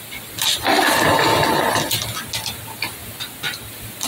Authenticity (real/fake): real